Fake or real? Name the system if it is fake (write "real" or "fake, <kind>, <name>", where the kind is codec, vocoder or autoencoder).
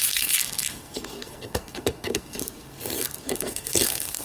fake, codec, SNAC